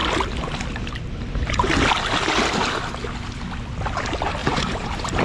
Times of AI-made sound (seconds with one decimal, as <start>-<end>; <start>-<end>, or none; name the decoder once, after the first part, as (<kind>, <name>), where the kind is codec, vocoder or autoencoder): 4.4-5.2 (vocoder, BigVGAN v2)